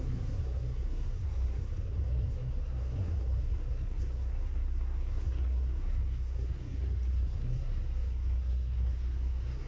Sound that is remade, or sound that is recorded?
remade